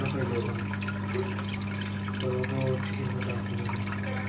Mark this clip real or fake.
real